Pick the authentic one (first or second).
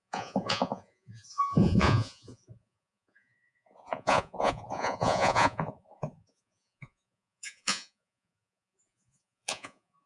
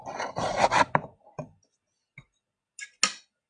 second